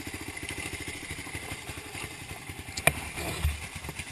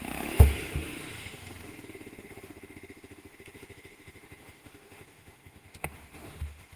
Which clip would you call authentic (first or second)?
first